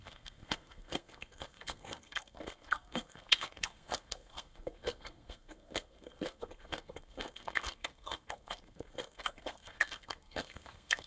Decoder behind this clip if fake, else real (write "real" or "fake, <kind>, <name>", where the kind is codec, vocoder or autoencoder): fake, codec, SNAC